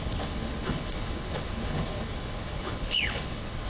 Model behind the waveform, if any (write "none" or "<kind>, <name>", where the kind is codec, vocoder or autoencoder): codec, HILCodec